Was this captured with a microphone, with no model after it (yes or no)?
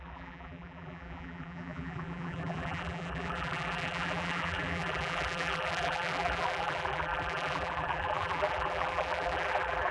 no